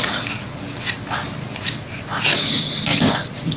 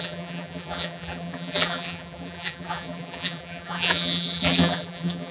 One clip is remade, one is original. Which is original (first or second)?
first